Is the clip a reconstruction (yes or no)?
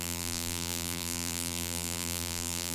yes